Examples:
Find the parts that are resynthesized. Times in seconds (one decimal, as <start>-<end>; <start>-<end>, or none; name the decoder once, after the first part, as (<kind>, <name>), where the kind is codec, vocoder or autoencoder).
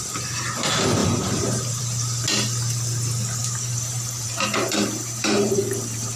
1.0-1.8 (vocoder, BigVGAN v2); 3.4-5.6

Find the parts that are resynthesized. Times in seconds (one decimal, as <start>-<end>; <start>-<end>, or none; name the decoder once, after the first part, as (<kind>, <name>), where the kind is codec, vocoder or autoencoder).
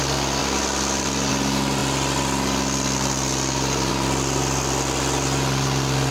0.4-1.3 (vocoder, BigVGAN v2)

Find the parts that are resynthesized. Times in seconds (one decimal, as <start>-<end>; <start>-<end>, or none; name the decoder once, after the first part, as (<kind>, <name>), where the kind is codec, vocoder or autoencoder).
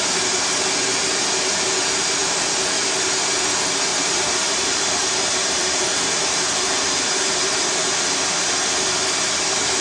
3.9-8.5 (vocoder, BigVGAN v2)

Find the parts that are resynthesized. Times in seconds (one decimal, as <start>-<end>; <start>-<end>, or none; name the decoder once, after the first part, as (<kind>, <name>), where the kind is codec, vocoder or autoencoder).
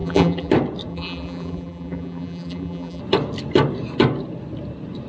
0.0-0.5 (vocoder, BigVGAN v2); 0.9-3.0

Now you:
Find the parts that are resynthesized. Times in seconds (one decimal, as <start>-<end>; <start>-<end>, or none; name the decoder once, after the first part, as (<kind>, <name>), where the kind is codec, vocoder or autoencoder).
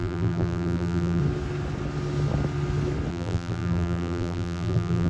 0.0-1.2 (vocoder, BigVGAN v2); 3.1-5.1